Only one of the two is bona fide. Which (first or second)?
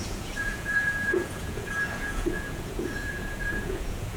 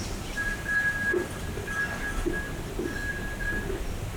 second